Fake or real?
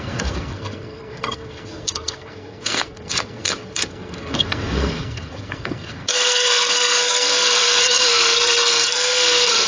fake